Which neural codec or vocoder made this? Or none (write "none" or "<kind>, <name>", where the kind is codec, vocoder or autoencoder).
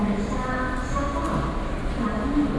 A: none